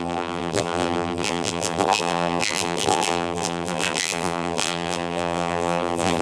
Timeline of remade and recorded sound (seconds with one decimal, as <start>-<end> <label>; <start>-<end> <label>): 0.0-6.2 remade